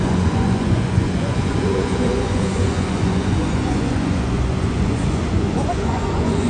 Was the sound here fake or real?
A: fake